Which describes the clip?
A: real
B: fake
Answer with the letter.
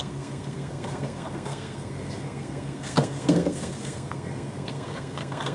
B